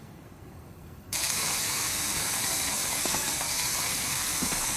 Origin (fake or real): fake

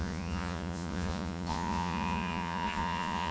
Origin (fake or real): fake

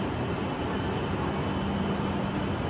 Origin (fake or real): real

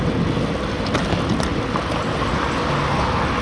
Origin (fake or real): real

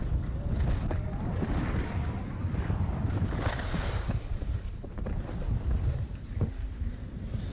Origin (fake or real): real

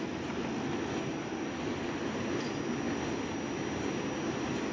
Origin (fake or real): real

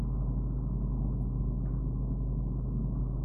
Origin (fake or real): real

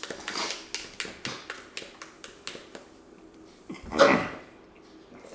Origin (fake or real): real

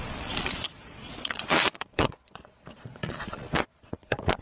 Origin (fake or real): fake